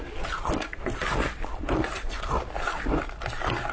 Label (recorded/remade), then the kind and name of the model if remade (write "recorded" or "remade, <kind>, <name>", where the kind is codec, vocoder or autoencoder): recorded